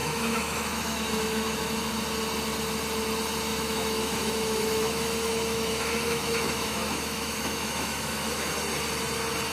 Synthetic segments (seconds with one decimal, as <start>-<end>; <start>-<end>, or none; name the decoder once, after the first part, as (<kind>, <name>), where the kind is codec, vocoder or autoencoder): 0.0-1.9 (autoencoder, DAC-VAE); 3.5-8.5